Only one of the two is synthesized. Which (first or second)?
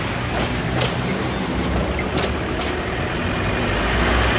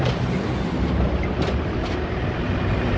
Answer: second